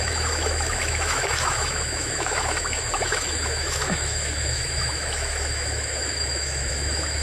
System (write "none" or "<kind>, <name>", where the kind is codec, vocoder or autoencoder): autoencoder, DAC-VAE